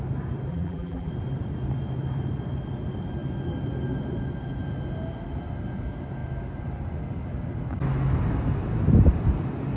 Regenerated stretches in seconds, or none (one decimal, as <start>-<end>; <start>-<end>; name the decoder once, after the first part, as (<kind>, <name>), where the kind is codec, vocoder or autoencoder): 0.5-1.1 (vocoder, BigVGAN v2)